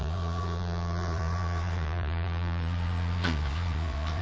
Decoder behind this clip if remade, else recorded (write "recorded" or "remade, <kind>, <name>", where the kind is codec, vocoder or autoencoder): remade, vocoder, Vocos